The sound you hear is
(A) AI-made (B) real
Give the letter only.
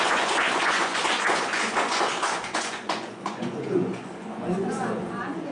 A